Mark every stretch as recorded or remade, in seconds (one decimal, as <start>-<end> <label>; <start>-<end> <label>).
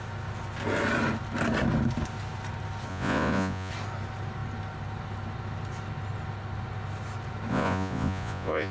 0.0-2.9 recorded; 2.9-3.7 remade; 3.7-7.5 recorded; 7.5-8.7 remade